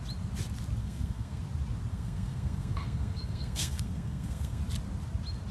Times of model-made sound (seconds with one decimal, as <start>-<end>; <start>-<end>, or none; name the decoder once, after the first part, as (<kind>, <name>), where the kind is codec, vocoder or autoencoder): 0.8-1.4 (codec, SNAC); 1.9-4.6